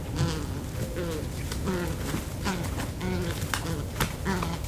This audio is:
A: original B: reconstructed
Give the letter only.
A